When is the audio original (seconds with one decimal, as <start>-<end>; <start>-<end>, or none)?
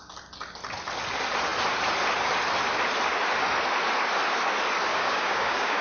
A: 0.0-4.9